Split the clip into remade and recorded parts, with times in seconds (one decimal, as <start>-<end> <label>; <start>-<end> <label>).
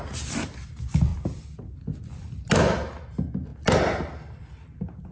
0.0-5.1 recorded